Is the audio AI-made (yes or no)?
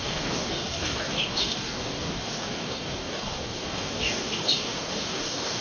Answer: yes